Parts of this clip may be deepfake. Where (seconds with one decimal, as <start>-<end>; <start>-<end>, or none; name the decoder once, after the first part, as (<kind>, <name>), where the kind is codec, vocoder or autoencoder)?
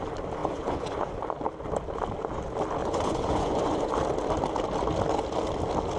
0.4-1.1 (vocoder, Vocos); 2.8-3.9